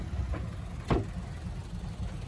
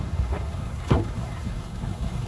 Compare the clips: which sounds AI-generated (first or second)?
second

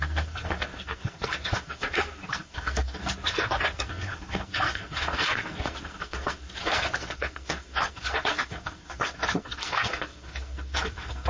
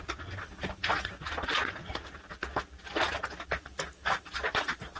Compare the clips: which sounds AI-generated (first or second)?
first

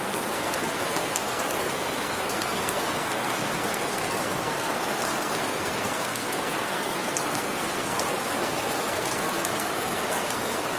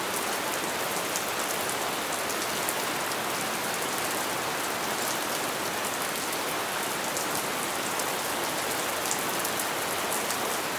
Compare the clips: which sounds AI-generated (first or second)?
first